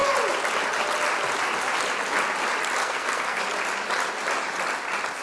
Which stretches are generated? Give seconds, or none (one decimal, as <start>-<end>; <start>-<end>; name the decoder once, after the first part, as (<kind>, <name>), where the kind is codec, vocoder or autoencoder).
2.8-3.4 (codec, SNAC)